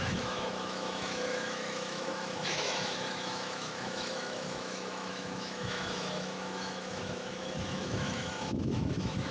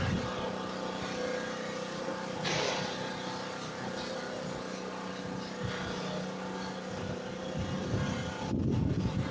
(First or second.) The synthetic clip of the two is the first